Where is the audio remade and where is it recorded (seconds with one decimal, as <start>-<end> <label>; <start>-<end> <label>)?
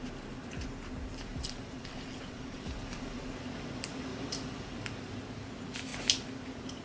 0.0-1.3 recorded; 1.3-3.2 remade; 3.2-4.1 recorded; 4.1-4.8 remade; 4.8-6.8 recorded